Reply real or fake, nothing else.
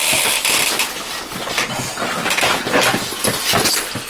real